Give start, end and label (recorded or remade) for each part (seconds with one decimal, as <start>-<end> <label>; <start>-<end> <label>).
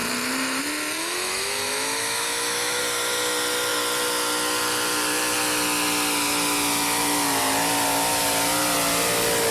0.0-1.0 recorded; 1.0-2.8 remade; 2.8-9.5 recorded